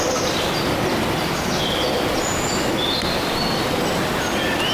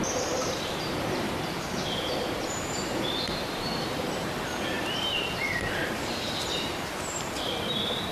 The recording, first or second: first